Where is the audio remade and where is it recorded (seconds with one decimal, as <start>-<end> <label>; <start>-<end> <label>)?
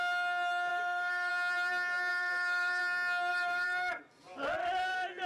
0.0-0.7 recorded; 0.7-1.3 remade; 1.3-2.1 recorded; 2.1-2.8 remade; 2.8-3.3 recorded; 3.3-4.0 remade; 4.0-5.3 recorded